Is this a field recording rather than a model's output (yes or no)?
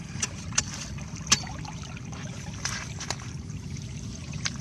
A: no